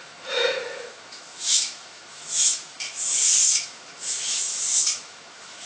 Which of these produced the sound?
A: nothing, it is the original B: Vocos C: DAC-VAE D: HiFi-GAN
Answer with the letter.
C